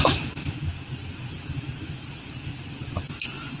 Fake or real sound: real